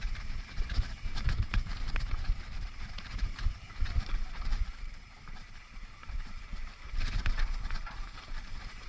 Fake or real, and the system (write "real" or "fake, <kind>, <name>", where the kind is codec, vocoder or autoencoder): fake, vocoder, BigVGAN v2